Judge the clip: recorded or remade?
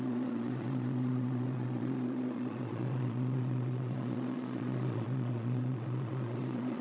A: remade